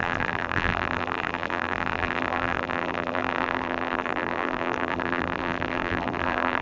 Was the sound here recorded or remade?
remade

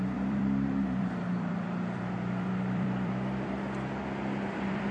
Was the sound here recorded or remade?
remade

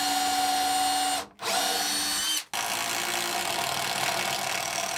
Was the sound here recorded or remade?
recorded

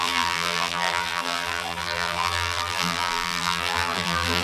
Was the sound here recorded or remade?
remade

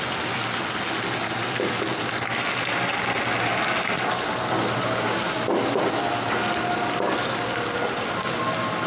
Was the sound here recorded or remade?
recorded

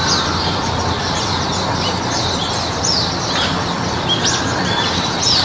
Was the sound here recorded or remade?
remade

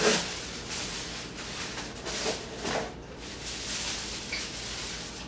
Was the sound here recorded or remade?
recorded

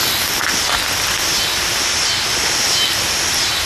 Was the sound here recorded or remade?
recorded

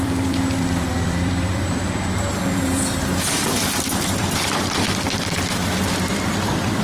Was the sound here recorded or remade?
remade